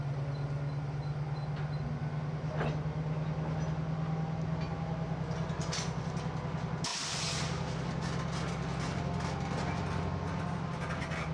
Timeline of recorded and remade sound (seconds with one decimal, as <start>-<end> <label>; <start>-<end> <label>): 0.0-11.3 recorded